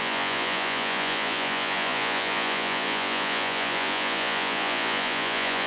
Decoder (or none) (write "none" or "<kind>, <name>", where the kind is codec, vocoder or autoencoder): vocoder, Vocos